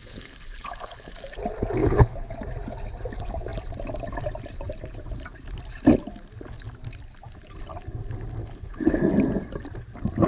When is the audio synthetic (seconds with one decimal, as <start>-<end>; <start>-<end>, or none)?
0.0-1.1; 1.8-2.4; 8.4-9.0